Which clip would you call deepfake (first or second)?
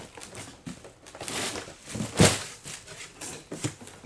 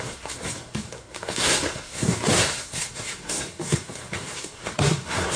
second